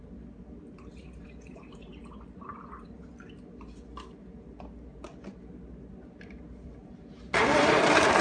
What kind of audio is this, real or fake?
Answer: fake